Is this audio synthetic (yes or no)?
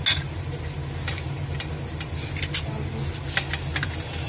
no